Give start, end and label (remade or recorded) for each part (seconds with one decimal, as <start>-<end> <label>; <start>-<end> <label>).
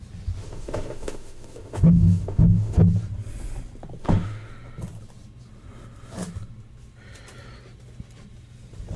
0.0-0.4 recorded; 0.4-2.8 remade; 2.8-4.0 recorded; 4.0-4.5 remade; 4.5-9.0 recorded